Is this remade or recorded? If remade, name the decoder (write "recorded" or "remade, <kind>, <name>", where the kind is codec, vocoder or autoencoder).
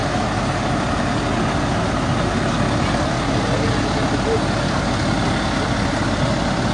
recorded